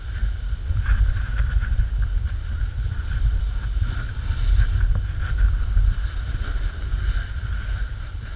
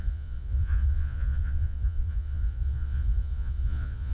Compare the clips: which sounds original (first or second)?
first